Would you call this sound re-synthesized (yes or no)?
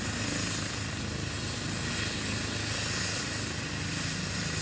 no